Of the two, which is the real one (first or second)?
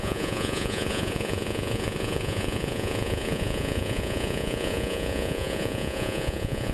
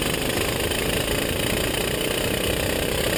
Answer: second